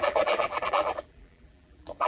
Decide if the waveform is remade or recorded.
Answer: remade